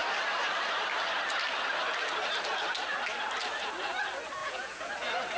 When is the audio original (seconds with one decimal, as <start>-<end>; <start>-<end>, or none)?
0.0-4.4; 4.9-5.4